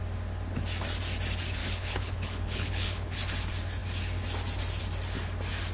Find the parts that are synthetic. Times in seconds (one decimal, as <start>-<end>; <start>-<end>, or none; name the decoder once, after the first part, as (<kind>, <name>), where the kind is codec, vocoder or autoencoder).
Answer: 1.6-3.2 (codec, HILCodec)